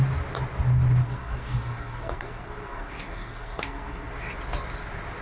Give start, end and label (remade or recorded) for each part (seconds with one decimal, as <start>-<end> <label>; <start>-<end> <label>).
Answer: 0.0-1.0 recorded; 1.0-4.1 remade; 4.1-5.2 recorded